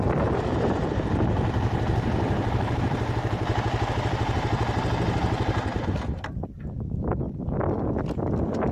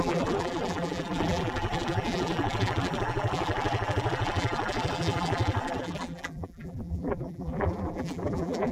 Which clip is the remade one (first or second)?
second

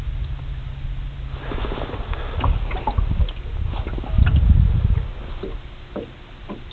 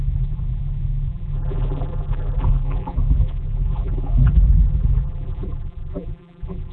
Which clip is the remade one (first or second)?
second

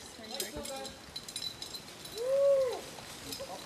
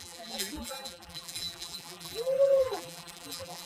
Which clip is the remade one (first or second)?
second